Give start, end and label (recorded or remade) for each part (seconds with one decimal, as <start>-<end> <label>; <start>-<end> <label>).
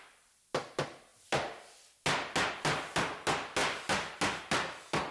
0.0-5.1 recorded